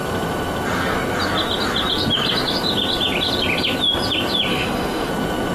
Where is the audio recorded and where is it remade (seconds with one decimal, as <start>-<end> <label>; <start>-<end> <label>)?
0.0-4.5 recorded; 4.5-5.1 remade; 5.1-5.5 recorded